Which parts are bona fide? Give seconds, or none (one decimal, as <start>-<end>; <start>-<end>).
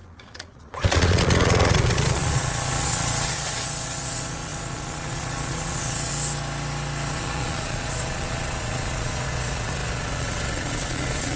6.1-7.1